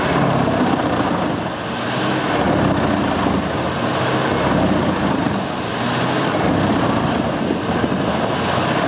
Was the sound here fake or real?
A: real